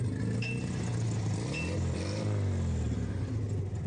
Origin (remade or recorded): recorded